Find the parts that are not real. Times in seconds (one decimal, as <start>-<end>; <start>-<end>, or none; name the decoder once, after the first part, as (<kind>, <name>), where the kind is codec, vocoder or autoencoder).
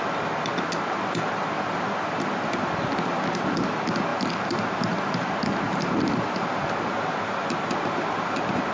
4.1-8.7 (vocoder, BigVGAN v2)